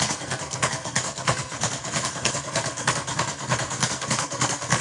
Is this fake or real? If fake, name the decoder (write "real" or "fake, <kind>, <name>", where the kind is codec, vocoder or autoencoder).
fake, codec, SNAC